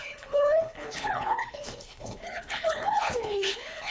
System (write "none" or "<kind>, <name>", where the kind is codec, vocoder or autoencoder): codec, HILCodec